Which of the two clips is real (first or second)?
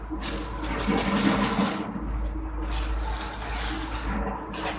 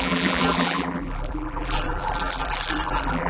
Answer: first